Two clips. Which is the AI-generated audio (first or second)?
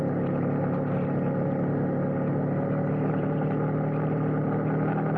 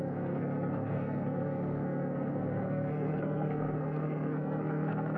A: second